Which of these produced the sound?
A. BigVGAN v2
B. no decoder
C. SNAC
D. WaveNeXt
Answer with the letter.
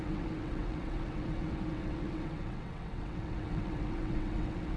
D